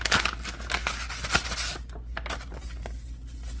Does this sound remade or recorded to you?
recorded